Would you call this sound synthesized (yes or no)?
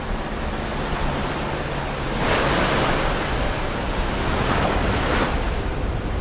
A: no